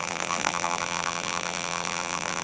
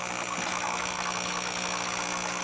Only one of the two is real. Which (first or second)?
second